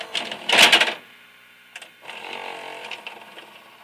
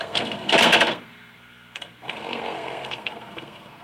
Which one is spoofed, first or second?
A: second